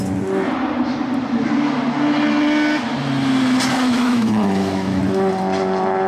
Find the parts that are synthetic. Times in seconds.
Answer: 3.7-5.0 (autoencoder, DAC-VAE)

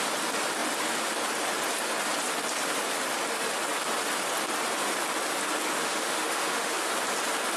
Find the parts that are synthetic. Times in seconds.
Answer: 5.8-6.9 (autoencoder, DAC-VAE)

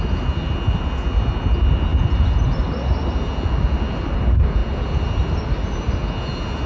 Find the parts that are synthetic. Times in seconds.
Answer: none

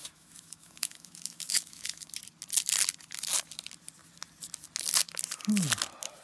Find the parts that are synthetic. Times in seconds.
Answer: 0.0-2.1 (autoencoder, DAC-VAE)